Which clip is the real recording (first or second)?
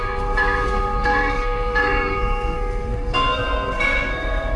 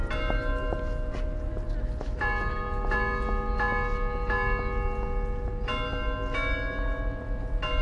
second